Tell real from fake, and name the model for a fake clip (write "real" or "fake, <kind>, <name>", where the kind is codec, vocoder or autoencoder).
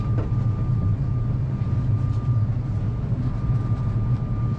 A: real